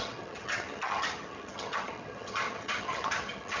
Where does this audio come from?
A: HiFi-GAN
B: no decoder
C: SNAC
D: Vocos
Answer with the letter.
A